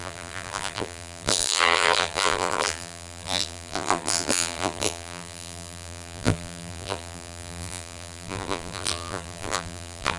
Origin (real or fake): fake